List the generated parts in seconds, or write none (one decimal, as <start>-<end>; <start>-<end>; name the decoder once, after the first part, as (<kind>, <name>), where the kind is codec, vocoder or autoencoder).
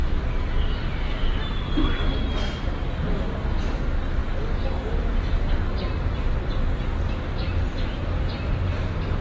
0.0-2.3 (vocoder, BigVGAN v2)